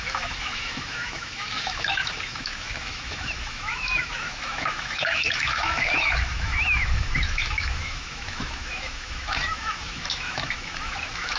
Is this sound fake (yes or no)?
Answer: yes